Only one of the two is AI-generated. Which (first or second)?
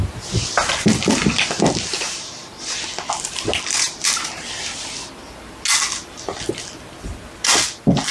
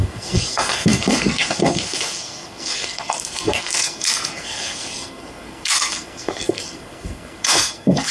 second